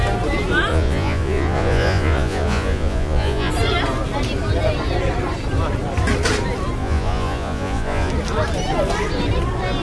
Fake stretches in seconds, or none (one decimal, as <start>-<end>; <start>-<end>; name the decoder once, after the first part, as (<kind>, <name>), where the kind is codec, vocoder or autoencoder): 0.7-3.5 (vocoder, Vocos); 6.8-8.1